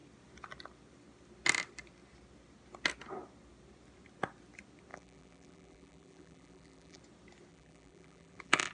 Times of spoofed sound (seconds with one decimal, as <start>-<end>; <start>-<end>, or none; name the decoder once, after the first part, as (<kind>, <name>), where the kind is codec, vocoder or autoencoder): 4.9-7.0 (vocoder, BigVGAN v2); 7.5-8.7